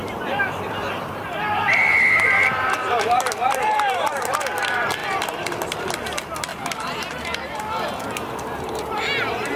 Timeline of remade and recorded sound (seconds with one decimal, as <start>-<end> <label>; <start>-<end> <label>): 0.0-4.4 remade; 4.4-5.0 recorded; 5.0-5.8 remade; 5.8-6.5 recorded; 6.5-7.6 remade; 7.6-9.6 recorded